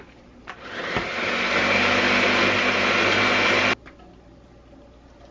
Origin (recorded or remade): recorded